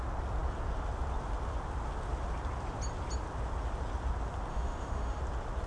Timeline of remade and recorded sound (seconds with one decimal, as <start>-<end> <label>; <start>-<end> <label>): 0.0-4.5 recorded; 4.5-5.2 remade; 5.2-5.7 recorded